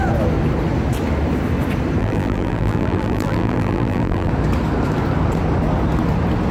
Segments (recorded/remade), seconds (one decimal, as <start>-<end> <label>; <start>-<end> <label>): 0.0-2.0 recorded; 2.0-4.3 remade; 4.3-6.5 recorded